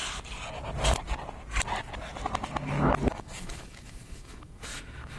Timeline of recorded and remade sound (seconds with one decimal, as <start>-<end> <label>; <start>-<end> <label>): 0.0-3.1 recorded; 3.1-5.2 remade